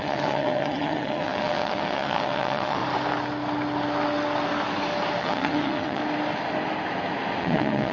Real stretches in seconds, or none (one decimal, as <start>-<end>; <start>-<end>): 2.8-5.2; 6.0-7.4